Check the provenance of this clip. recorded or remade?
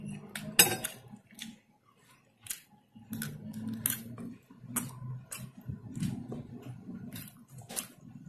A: recorded